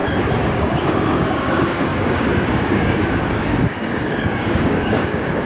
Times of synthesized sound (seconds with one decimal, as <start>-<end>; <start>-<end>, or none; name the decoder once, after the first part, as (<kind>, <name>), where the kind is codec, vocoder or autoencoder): 0.5-5.4 (codec, DAC)